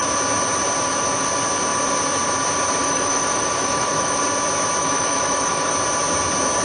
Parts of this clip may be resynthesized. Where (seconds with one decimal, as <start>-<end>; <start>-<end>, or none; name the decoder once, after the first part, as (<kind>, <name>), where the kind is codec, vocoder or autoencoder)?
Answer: 2.8-4.2 (autoencoder, DAC-VAE); 4.8-5.7